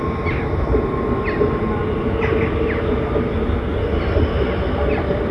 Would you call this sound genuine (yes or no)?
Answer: yes